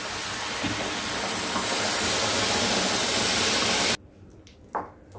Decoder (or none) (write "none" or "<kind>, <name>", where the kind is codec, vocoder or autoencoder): none